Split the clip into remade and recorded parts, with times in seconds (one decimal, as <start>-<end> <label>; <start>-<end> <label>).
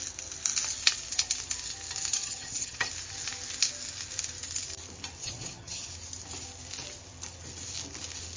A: 0.0-2.1 recorded; 2.1-2.9 remade; 2.9-5.2 recorded; 5.2-5.9 remade; 5.9-8.4 recorded